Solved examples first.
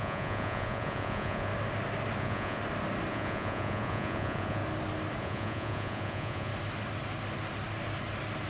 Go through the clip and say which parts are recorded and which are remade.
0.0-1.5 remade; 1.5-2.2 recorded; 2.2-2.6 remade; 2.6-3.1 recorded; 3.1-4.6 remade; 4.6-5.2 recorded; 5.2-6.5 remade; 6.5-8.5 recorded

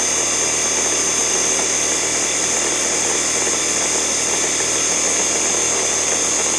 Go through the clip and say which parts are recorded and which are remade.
0.0-1.2 recorded; 1.2-2.9 remade; 2.9-6.6 recorded

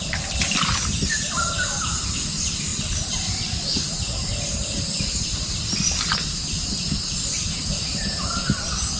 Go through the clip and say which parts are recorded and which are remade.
0.0-9.0 recorded

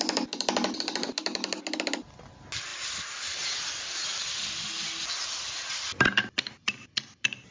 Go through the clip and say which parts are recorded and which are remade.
0.0-7.5 recorded

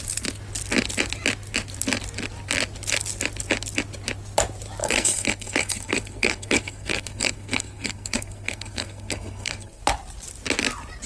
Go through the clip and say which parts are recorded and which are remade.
0.0-4.8 recorded; 4.8-9.8 remade; 9.8-11.1 recorded

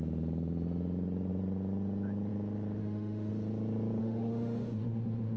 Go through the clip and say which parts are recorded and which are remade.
0.0-2.8 recorded; 2.8-3.3 remade; 3.3-4.0 recorded; 4.0-5.4 remade

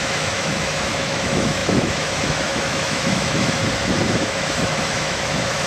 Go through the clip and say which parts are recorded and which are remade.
0.0-3.6 remade; 3.6-4.2 recorded; 4.2-5.7 remade

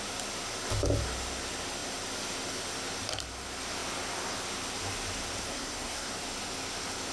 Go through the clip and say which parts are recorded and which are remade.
0.0-5.5 recorded; 5.5-6.1 remade; 6.1-7.1 recorded